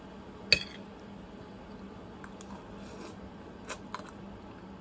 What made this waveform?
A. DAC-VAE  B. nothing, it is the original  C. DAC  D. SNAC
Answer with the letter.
B